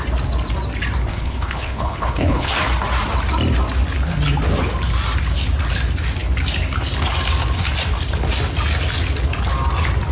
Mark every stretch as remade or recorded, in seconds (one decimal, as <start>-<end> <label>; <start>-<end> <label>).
0.0-1.1 recorded; 1.1-2.5 remade; 2.5-10.1 recorded